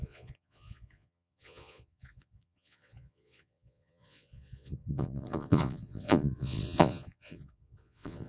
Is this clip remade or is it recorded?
remade